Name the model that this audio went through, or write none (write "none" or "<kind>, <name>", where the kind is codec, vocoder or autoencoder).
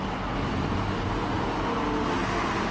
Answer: none